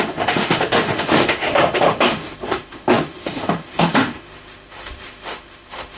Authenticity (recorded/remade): remade